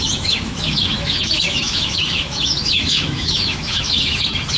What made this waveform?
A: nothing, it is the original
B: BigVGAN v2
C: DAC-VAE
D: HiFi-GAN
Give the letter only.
C